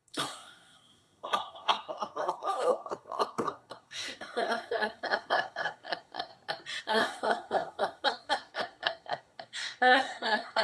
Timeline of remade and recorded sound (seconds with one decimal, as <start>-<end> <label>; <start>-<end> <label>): 0.0-6.3 remade; 6.3-6.8 recorded; 6.8-10.6 remade